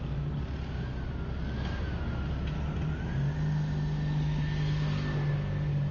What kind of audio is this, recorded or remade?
recorded